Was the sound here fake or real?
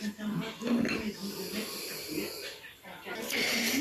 real